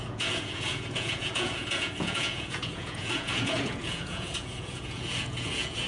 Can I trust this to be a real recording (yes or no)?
no